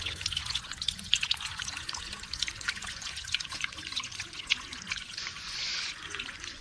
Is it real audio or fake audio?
fake